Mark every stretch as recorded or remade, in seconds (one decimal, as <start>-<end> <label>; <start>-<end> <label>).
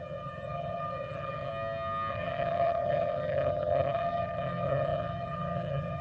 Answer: 0.0-1.5 remade; 1.5-2.1 recorded; 2.1-6.0 remade